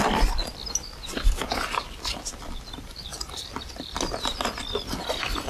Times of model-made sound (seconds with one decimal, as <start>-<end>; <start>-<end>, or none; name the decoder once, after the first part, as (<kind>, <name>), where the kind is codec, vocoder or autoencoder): none